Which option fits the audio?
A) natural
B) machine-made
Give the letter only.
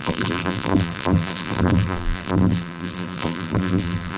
B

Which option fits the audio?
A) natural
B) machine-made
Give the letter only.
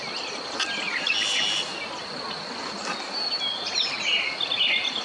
A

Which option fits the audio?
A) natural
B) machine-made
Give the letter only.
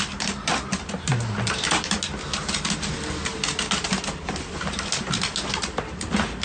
A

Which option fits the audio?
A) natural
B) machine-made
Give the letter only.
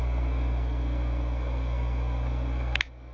B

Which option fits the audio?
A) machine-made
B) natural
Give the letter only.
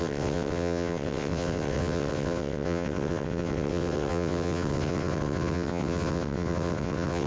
A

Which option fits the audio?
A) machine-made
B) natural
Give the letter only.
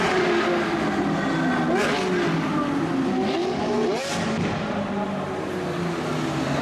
B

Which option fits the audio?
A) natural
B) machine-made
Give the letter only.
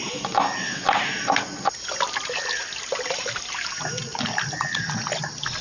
A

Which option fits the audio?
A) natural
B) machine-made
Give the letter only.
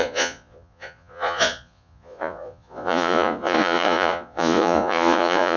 B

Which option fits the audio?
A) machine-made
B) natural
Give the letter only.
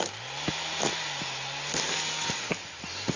B